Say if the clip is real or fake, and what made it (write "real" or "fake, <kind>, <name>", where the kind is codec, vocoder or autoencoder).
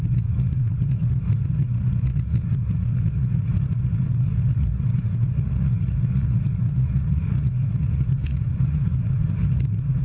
fake, vocoder, Vocos